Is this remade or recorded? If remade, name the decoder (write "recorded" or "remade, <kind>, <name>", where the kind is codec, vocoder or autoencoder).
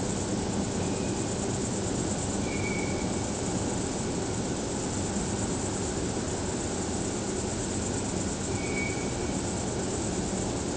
recorded